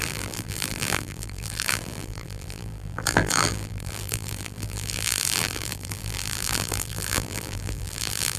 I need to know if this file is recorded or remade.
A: remade